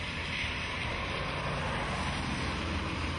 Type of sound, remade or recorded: recorded